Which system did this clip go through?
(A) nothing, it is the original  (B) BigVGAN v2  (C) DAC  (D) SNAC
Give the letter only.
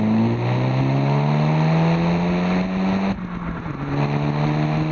A